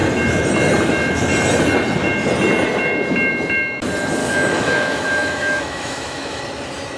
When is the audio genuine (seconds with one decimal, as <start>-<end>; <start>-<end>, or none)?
0.0-4.2; 6.4-7.0